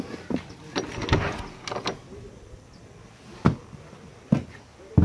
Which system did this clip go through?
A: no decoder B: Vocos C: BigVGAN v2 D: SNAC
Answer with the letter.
A